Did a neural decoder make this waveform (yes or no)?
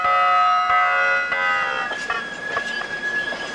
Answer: no